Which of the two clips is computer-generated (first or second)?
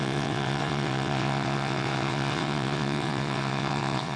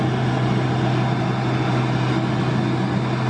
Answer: first